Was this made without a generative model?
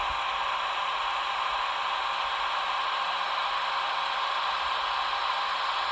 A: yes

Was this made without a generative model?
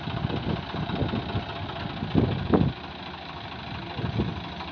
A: yes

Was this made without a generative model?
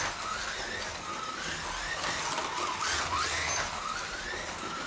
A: yes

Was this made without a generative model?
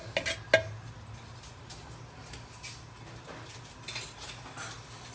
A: yes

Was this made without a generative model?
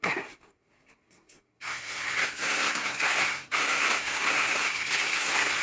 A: no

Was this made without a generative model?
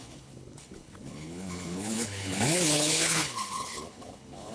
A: no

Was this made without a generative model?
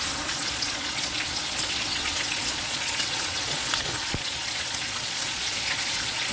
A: no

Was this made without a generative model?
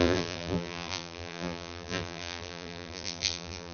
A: no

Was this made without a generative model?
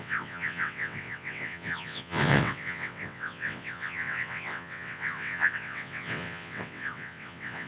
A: no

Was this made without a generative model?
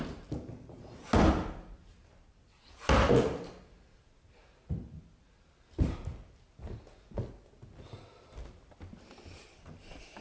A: yes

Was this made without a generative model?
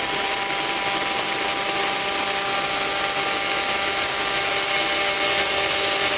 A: yes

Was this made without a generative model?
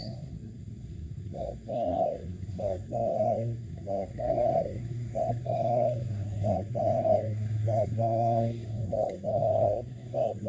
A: no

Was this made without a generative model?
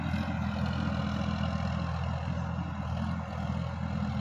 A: yes